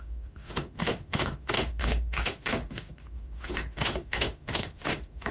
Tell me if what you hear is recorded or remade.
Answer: remade